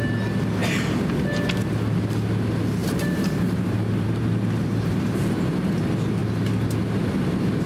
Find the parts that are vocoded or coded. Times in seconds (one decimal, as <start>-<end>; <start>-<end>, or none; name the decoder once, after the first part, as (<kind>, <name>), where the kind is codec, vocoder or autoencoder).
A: 2.8-4.9 (vocoder, BigVGAN v2)